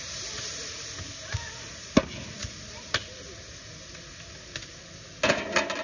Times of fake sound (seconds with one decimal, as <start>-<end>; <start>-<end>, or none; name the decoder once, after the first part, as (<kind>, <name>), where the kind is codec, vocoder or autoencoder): none

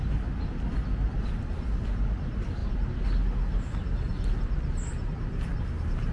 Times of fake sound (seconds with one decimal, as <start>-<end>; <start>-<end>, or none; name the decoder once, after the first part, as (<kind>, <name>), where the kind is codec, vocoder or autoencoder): none

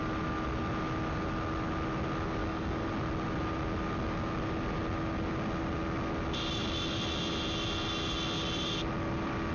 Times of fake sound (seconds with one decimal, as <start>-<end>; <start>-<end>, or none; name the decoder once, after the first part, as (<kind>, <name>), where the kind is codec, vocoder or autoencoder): 2.4-2.9 (codec, DAC)

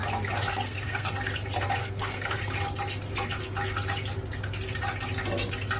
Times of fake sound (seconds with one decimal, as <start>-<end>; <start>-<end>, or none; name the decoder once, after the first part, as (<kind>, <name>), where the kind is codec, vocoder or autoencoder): 0.5-1.1 (codec, SNAC); 1.8-2.4

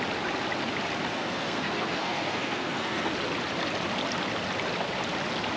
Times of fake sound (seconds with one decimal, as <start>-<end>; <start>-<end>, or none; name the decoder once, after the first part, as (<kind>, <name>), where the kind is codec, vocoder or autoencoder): 1.1-3.1 (codec, SNAC)

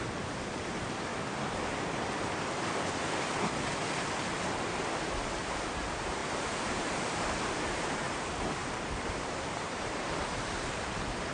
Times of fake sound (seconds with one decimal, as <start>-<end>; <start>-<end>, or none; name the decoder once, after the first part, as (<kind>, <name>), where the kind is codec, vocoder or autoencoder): 0.0-1.1 (vocoder, BigVGAN v2); 5.7-8.6; 9.1-11.3